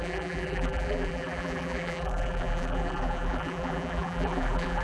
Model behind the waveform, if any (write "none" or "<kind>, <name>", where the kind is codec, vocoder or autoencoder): vocoder, BigVGAN v2